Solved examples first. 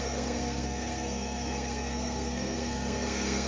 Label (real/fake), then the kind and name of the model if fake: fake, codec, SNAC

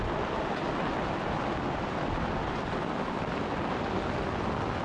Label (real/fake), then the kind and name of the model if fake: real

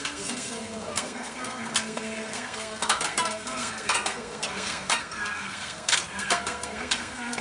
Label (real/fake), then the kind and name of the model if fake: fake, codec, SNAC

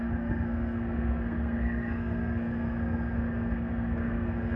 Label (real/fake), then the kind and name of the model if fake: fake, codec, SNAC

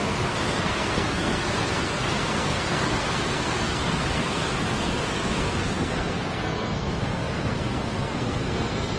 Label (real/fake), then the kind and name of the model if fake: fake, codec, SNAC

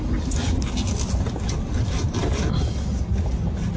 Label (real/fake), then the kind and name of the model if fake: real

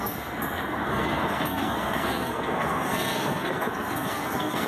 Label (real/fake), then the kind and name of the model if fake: fake, codec, SNAC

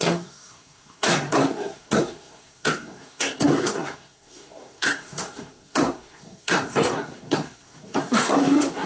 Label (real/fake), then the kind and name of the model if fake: fake, codec, SNAC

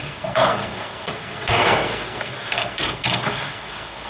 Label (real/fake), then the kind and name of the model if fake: fake, codec, SNAC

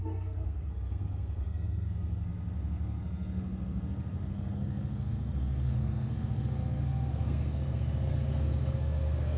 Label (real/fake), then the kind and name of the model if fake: fake, codec, SNAC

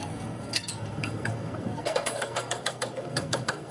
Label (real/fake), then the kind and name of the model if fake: fake, codec, SNAC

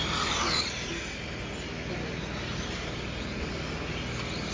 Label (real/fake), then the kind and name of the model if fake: real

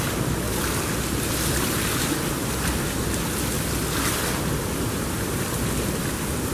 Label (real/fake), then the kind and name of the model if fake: real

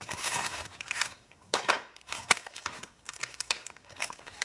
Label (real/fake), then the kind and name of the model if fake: fake, codec, SNAC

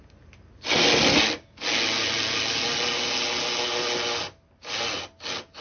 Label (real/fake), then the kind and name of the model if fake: real